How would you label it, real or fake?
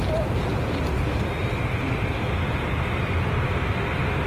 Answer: real